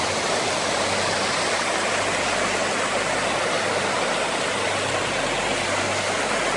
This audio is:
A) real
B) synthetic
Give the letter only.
A